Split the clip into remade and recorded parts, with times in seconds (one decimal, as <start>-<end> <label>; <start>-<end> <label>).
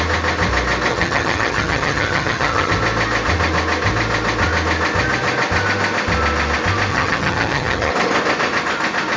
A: 0.0-0.9 recorded; 0.9-2.7 remade; 2.7-6.9 recorded; 6.9-7.9 remade; 7.9-9.2 recorded